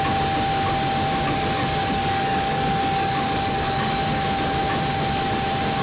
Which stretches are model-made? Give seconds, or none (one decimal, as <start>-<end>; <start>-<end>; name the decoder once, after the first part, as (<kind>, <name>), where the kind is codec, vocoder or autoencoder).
1.8-4.0 (codec, DAC)